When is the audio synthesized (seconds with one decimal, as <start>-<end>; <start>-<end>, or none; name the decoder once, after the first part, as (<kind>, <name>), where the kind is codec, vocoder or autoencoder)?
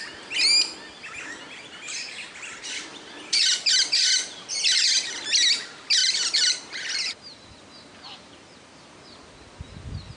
2.9-3.4 (vocoder, BigVGAN v2); 6.0-9.6